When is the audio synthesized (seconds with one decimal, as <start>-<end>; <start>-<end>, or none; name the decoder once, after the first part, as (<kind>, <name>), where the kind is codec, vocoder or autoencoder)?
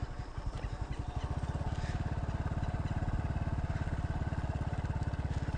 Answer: none